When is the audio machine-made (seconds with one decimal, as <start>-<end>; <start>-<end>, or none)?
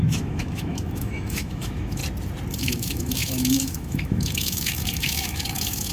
0.0-2.0; 2.6-5.9